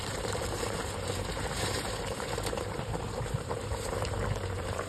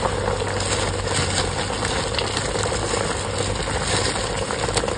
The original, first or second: second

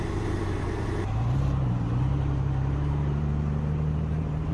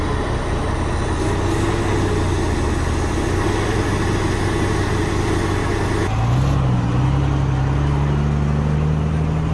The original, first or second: second